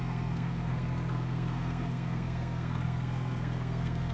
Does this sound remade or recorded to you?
remade